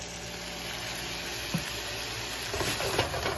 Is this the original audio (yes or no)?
yes